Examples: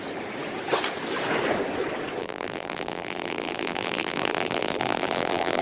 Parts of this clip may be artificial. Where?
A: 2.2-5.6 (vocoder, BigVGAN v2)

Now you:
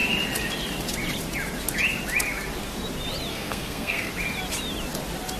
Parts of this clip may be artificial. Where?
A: 3.3-4.1 (codec, SNAC)

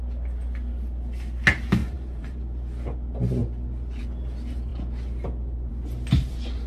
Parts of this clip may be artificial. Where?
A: 1.8-2.4 (vocoder, BigVGAN v2)

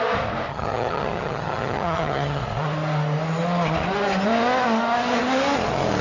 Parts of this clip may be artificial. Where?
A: 0.5-2.4 (vocoder, HiFi-GAN)

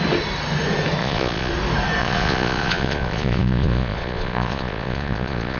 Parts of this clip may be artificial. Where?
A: 1.0-1.5 (vocoder, Vocos); 2.0-5.6

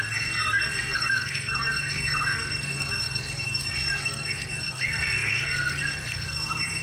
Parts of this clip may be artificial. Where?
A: 0.0-6.8 (codec, SNAC)

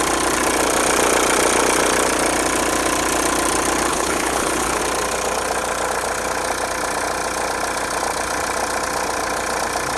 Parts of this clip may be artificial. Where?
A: 3.9-4.8 (codec, HILCodec)